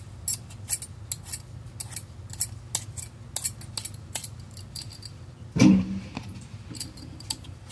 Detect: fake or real real